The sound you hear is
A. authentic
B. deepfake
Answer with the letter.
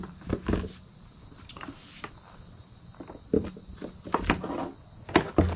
A